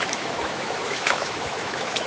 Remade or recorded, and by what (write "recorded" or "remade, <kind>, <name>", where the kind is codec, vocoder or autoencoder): remade, autoencoder, DAC-VAE